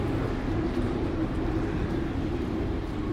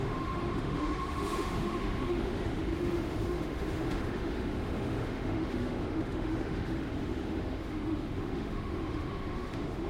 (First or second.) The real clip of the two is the first